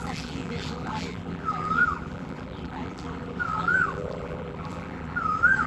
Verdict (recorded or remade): remade